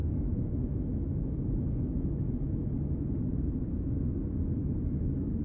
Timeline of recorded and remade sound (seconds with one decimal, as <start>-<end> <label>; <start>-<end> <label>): 0.0-3.2 remade; 3.2-4.6 recorded; 4.6-5.4 remade